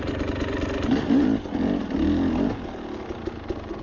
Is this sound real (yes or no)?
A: no